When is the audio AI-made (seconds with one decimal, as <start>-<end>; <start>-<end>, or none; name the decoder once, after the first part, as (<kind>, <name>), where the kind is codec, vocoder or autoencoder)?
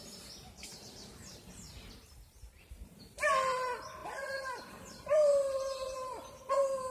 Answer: 0.7-3.0 (vocoder, BigVGAN v2); 4.0-6.5